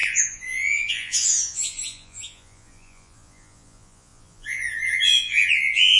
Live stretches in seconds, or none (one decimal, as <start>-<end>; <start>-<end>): none